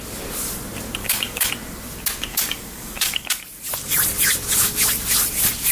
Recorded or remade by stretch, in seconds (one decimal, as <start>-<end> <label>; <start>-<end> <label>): 0.0-1.0 recorded; 1.0-1.5 remade; 1.5-2.3 recorded; 2.3-3.4 remade; 3.4-5.7 recorded